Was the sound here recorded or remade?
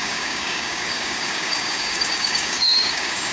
remade